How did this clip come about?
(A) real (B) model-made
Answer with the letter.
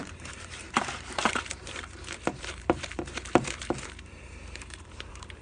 B